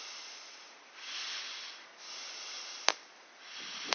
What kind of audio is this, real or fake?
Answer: real